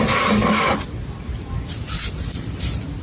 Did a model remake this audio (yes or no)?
no